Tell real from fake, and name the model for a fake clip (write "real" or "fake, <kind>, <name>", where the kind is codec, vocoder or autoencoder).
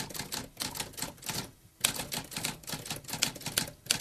real